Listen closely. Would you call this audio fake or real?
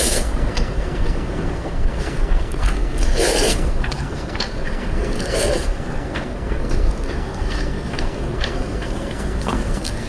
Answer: fake